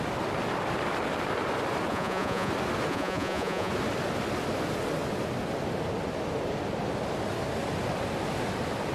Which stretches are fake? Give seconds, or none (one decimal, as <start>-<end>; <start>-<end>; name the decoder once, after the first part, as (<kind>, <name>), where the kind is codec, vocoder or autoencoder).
1.9-2.5 (vocoder, Vocos); 2.9-3.7